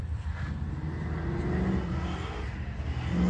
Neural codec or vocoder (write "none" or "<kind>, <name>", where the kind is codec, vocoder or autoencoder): none